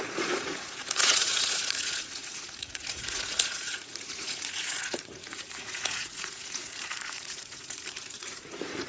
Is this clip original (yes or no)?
no